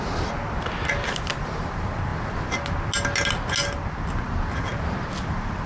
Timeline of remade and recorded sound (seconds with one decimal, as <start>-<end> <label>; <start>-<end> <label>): 0.0-5.7 recorded